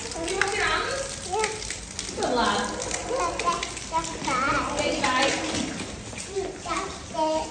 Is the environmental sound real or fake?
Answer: real